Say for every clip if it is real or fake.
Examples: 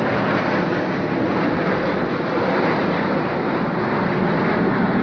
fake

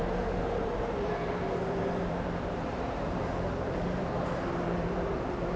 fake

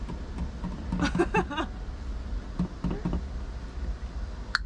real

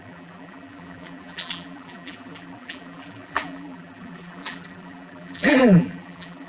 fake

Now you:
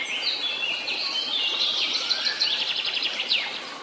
real